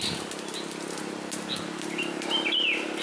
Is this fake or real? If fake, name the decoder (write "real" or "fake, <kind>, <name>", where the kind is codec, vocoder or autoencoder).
real